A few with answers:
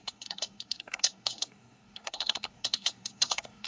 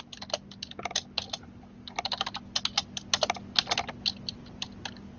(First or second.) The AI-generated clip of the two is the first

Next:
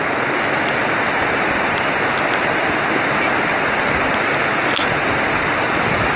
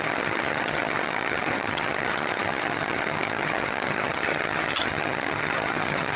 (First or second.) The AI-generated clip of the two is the second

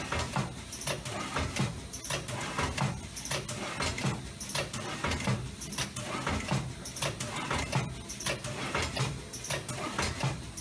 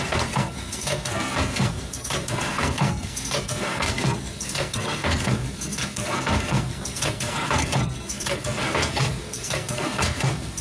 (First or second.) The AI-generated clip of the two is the second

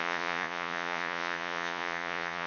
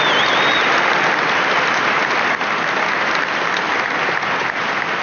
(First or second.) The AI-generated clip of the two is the first